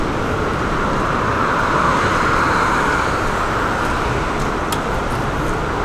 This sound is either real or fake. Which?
real